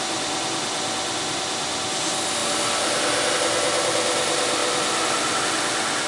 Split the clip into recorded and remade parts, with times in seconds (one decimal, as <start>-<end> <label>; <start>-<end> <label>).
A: 0.0-6.1 recorded